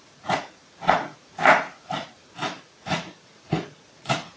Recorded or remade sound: remade